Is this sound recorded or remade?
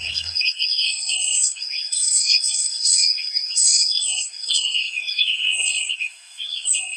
remade